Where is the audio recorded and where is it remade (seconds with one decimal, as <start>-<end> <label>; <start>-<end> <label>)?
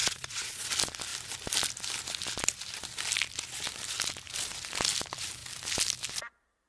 0.0-0.7 remade; 0.7-6.7 recorded